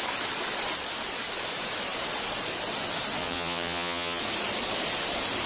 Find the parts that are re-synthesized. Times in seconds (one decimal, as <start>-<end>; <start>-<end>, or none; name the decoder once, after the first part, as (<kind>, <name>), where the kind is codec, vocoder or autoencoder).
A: 3.2-4.2 (vocoder, Vocos)